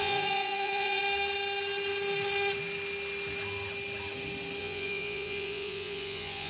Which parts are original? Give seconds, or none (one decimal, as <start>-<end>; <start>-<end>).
1.0-4.6